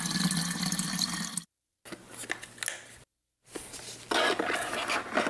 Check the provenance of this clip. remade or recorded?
recorded